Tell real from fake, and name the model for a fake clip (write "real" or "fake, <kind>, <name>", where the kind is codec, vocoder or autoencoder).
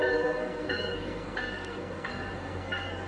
fake, codec, SNAC